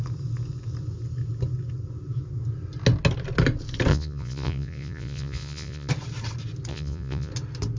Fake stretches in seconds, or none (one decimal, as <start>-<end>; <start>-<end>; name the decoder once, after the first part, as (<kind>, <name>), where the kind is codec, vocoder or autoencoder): 3.9-5.9 (vocoder, Vocos); 6.7-7.3